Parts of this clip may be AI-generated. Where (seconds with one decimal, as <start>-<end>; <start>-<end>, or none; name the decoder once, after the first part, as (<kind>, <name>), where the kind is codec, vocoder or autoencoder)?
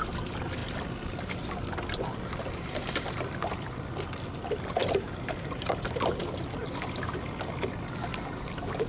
4.8-6.2 (vocoder, BigVGAN v2)